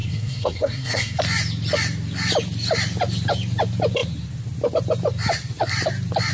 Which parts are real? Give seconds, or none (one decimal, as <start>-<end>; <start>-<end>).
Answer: 1.2-6.3